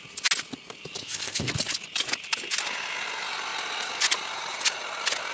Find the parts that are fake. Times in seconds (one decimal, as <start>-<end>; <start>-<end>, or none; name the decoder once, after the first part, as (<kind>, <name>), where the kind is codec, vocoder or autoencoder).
1.0-1.5 (codec, ZipCodec)